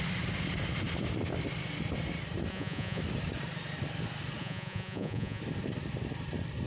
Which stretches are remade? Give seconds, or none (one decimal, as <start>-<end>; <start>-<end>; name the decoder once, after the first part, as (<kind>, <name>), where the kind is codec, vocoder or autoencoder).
2.5-3.0 (vocoder, Vocos); 4.4-5.4